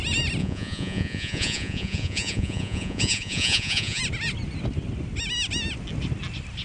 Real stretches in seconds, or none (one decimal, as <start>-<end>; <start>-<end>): 0.0-0.4; 4.0-6.6